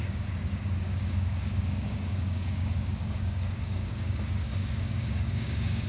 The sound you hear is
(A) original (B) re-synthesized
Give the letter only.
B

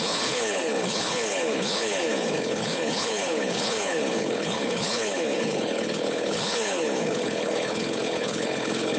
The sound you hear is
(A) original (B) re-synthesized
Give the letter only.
B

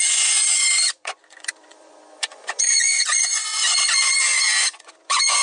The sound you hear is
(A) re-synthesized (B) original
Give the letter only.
A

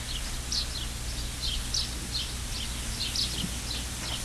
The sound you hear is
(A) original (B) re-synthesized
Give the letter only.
A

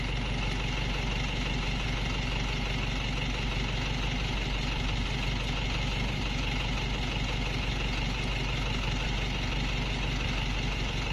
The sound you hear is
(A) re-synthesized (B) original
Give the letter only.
B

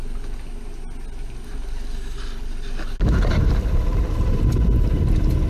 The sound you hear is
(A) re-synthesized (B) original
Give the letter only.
B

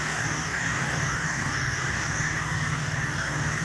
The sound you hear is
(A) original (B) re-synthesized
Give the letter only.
B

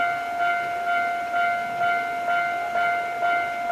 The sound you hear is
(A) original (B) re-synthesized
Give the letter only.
A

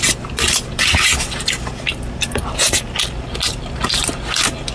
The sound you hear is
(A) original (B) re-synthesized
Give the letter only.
A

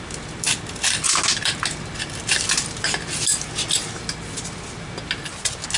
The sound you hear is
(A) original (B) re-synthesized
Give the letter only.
A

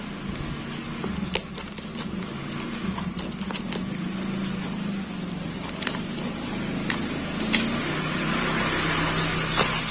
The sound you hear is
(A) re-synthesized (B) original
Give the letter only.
B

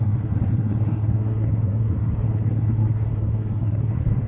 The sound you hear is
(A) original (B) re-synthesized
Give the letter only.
B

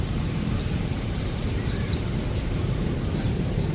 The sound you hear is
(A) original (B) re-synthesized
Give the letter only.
B